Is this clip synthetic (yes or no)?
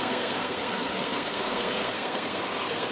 yes